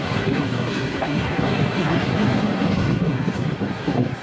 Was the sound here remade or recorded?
remade